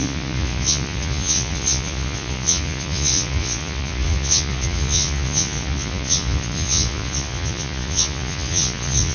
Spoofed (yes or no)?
yes